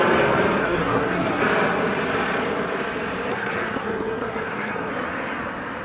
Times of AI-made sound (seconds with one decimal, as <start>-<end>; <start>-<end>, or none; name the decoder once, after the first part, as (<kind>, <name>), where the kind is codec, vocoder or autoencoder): 0.6-1.4 (codec, SNAC); 3.3-4.9